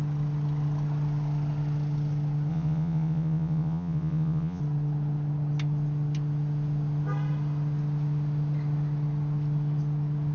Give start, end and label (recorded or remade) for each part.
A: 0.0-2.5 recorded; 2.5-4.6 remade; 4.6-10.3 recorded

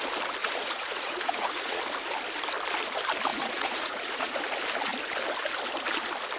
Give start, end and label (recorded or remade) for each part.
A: 0.0-0.4 recorded; 0.4-1.8 remade; 1.8-3.3 recorded; 3.3-4.4 remade; 4.4-6.4 recorded

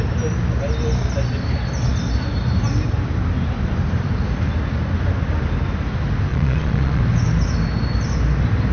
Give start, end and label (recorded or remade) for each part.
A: 0.0-6.3 recorded; 6.3-7.0 remade; 7.0-8.7 recorded